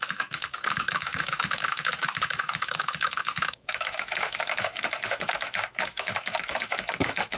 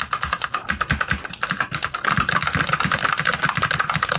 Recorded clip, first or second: second